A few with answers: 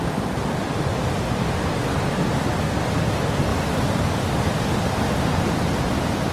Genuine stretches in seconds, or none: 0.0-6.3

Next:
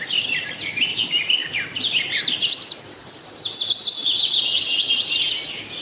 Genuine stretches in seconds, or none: 0.0-4.0; 4.9-5.8

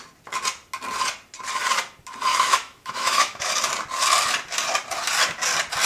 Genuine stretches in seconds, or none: 0.0-2.3; 3.5-5.9

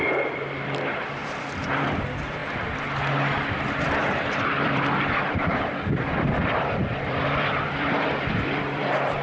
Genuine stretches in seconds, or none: 2.4-3.6